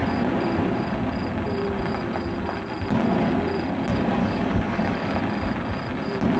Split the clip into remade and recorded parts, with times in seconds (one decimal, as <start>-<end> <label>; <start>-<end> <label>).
0.0-4.2 recorded; 4.2-5.1 remade; 5.1-6.4 recorded